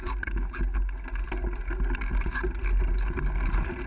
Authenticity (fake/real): real